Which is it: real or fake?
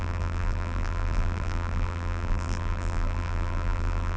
fake